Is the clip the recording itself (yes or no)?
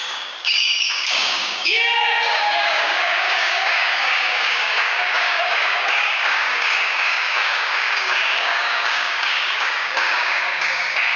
no